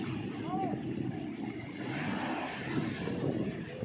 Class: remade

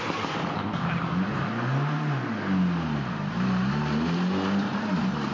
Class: recorded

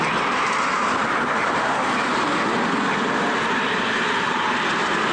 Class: recorded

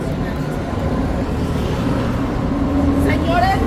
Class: recorded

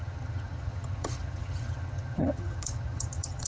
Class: remade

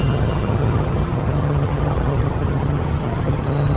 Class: remade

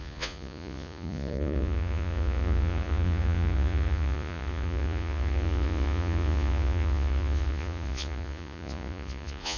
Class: remade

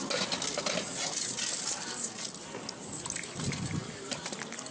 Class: recorded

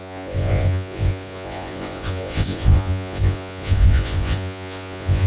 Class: remade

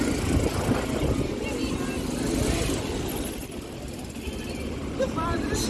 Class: recorded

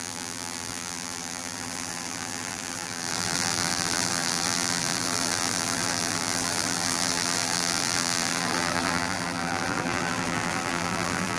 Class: remade